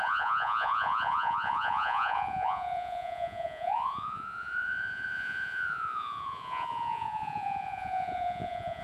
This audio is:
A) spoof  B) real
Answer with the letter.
A